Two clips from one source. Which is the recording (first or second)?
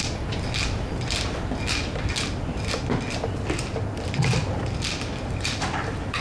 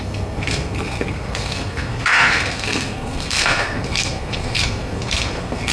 first